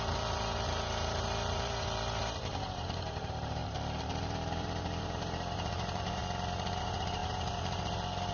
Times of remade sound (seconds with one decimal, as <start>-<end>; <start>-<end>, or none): 0.0-3.6; 5.0-6.2; 6.8-8.3